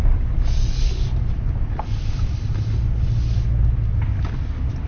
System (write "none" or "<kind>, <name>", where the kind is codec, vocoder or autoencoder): none